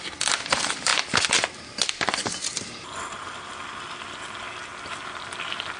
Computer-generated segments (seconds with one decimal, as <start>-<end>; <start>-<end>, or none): 4.7-5.8